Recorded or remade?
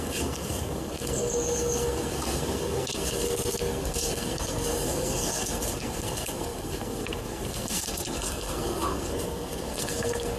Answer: remade